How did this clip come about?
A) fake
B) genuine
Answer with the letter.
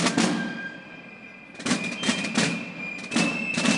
B